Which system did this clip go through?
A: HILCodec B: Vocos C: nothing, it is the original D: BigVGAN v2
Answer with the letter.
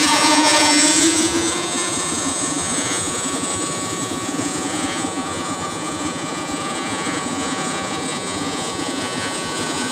B